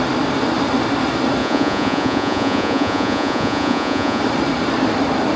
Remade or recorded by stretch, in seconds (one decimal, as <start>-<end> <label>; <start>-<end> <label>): 0.0-1.4 recorded; 1.4-4.2 remade; 4.2-5.4 recorded